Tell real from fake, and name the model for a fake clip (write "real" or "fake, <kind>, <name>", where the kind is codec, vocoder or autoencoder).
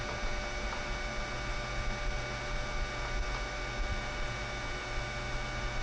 real